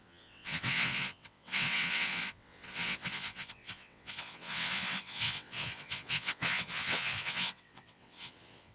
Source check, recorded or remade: remade